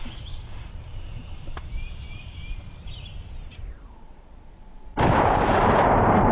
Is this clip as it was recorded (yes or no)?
no